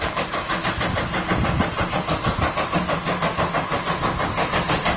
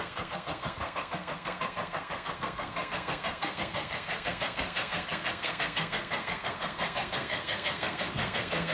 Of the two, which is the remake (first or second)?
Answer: second